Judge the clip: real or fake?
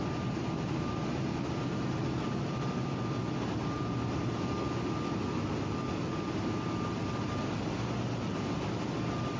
real